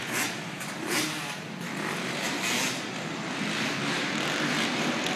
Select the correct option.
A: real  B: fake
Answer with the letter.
A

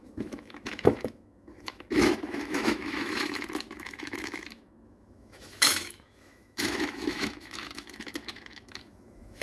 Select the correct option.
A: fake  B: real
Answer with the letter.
A